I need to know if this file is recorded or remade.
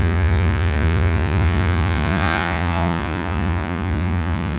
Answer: remade